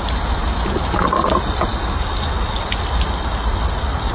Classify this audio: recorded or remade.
recorded